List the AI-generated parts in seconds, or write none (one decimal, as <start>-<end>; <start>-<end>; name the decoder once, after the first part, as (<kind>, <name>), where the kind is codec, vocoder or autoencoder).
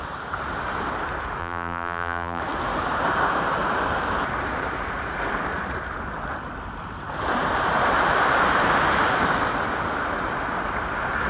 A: 1.4-2.4 (vocoder, BigVGAN v2)